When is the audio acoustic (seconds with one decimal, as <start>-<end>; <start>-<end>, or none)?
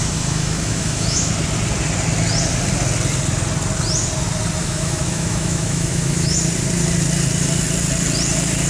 1.3-4.6; 6.4-8.7